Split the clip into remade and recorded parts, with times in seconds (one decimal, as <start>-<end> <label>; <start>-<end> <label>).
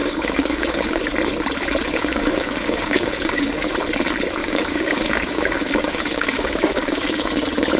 0.0-1.0 remade; 1.0-1.9 recorded; 1.9-3.7 remade; 3.7-4.4 recorded; 4.4-7.3 remade; 7.3-7.8 recorded